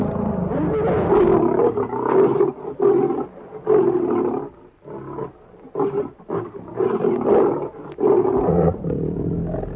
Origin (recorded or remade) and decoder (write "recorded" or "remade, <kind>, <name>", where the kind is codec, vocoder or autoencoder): recorded